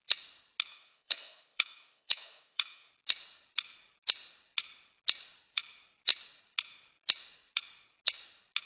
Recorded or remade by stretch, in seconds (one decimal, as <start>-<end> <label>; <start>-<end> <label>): 0.0-0.7 recorded; 0.7-2.9 remade; 2.9-8.7 recorded